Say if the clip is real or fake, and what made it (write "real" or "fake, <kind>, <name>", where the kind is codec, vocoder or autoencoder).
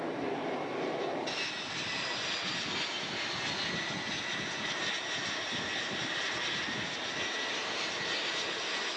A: real